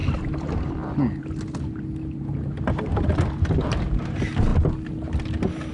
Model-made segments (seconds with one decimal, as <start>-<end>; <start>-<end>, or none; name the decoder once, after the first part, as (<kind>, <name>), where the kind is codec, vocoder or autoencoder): 0.0-0.7 (vocoder, BigVGAN v2)